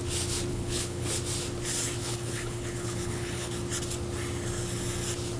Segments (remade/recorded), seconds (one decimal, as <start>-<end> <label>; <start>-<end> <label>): 0.0-0.5 recorded; 0.5-1.1 remade; 1.1-2.0 recorded; 2.0-3.5 remade; 3.5-5.4 recorded